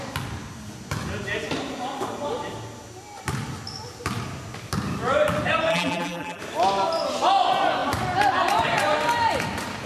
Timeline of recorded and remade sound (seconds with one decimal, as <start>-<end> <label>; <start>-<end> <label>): 0.0-5.7 recorded; 5.7-6.4 remade; 6.4-9.9 recorded